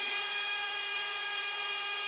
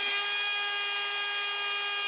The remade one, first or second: first